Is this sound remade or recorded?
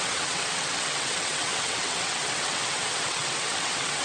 remade